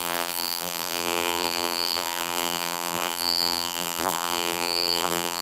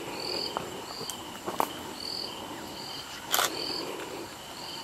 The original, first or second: second